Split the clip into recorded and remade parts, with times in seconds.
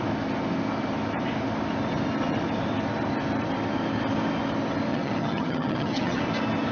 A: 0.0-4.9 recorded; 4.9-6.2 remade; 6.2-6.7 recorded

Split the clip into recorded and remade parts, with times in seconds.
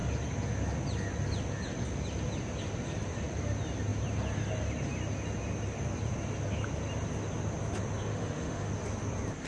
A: 0.0-8.1 recorded; 8.1-8.7 remade; 8.7-9.5 recorded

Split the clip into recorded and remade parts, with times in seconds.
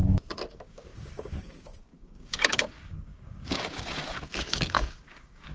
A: 0.0-0.5 recorded; 0.5-5.5 remade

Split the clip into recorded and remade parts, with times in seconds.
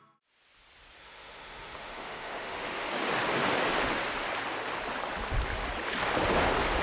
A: 0.0-1.0 recorded; 1.0-2.9 remade; 2.9-6.8 recorded